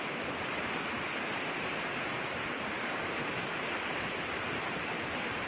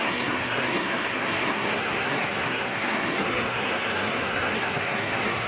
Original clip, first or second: first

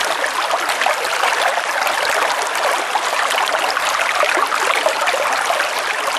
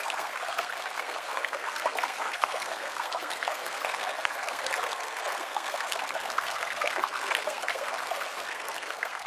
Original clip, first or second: first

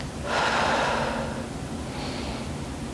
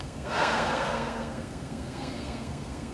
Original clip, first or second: first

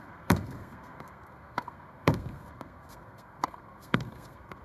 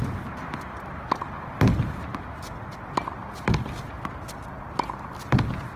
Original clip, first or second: second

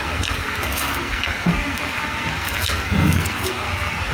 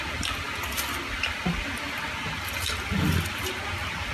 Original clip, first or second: second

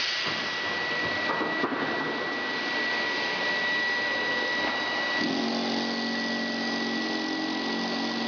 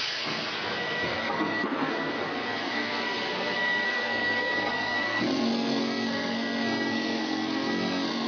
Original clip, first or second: first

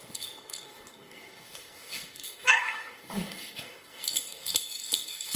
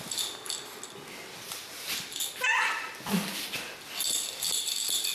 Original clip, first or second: second